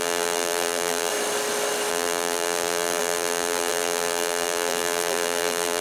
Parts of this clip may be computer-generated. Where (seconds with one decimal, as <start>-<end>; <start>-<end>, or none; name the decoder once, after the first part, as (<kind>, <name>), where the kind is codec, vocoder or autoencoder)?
0.0-1.1 (vocoder, BigVGAN v2); 1.9-5.8